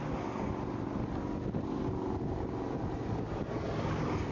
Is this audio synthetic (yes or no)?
no